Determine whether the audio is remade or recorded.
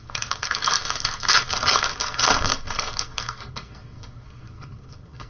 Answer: remade